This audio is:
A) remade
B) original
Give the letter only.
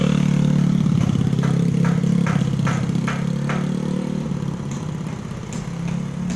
B